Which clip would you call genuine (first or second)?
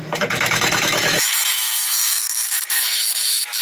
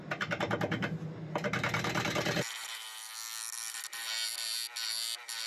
second